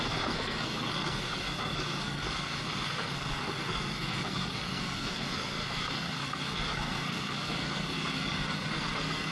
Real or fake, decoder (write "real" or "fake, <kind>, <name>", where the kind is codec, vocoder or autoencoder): fake, codec, SNAC